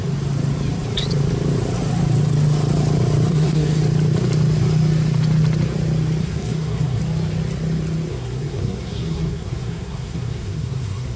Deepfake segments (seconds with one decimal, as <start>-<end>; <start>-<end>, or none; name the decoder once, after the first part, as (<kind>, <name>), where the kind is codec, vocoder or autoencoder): 3.3-3.8 (codec, SNAC); 6.2-7.0; 8.1-11.2